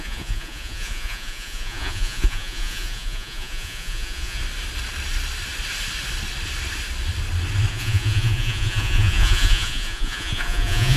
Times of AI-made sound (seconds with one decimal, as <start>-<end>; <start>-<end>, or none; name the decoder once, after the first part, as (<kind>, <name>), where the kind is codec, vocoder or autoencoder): 0.0-4.4 (vocoder, Vocos); 7.7-11.0